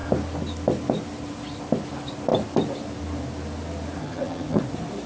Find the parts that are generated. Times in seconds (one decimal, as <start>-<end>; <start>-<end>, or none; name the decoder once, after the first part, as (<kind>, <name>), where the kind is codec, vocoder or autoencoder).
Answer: 4.0-4.6 (vocoder, HiFi-GAN)